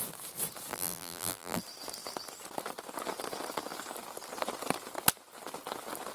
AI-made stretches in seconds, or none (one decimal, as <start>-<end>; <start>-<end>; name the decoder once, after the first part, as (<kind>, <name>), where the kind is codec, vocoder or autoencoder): 0.7-1.6 (vocoder, BigVGAN v2)